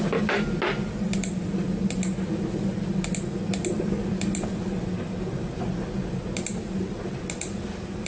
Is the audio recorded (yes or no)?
yes